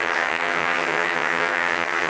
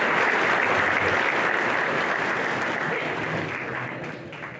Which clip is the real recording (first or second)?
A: second